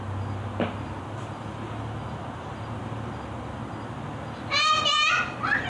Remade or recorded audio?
recorded